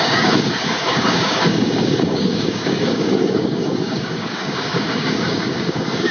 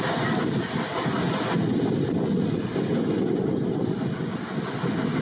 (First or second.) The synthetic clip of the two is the first